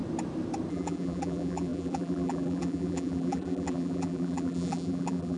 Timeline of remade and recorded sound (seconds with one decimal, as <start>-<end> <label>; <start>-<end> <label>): 0.0-0.7 recorded; 0.7-5.4 remade